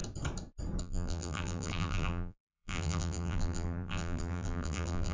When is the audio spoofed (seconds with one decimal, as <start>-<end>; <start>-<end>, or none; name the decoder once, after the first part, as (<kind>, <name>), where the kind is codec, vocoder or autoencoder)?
0.8-5.1 (vocoder, BigVGAN v2)